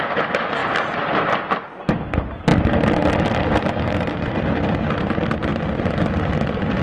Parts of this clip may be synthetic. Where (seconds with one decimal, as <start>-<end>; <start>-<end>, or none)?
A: 0.6-1.3; 2.5-4.5; 5.5-6.8